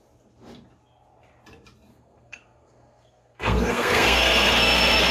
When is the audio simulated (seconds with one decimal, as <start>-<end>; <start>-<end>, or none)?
1.9-5.1